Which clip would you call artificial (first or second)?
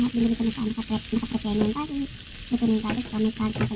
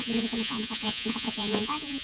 second